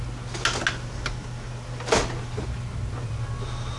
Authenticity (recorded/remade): recorded